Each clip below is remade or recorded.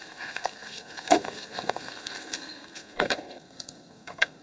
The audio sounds remade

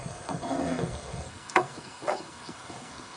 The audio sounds remade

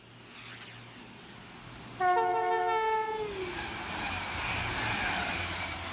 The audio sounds recorded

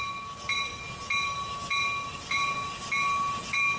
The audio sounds recorded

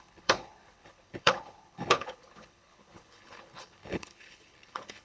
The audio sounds remade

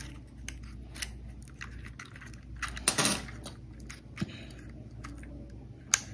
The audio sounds recorded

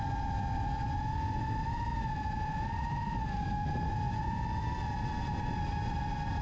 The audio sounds recorded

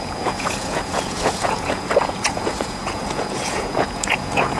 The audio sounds remade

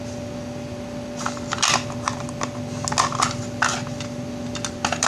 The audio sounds recorded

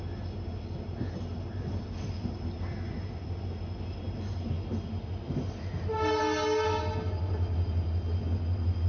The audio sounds recorded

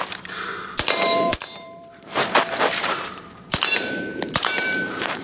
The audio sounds remade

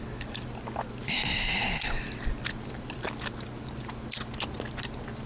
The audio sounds recorded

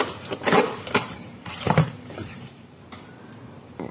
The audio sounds remade